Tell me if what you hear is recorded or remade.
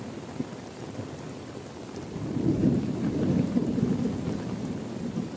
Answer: recorded